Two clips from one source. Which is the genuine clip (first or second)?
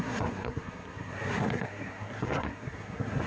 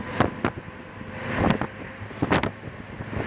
second